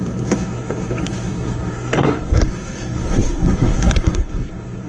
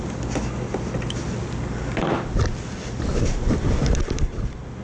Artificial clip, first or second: first